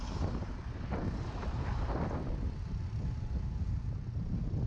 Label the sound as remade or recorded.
recorded